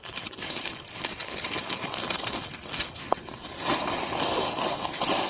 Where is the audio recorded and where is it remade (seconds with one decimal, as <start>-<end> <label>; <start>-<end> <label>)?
0.0-5.3 recorded